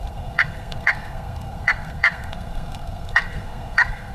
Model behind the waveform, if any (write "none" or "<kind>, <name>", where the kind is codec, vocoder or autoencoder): codec, SNAC